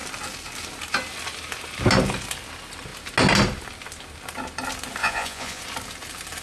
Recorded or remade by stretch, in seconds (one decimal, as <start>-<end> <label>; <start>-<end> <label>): 0.0-5.0 recorded; 5.0-5.6 remade; 5.6-6.4 recorded